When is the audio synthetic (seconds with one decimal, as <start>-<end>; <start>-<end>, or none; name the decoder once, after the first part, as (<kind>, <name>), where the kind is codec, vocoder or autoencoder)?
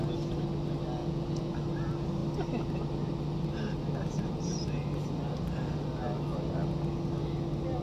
1.0-1.5 (vocoder, Vocos)